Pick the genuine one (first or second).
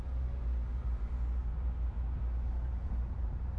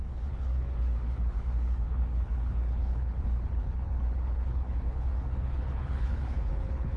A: first